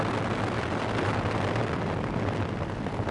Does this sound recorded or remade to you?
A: recorded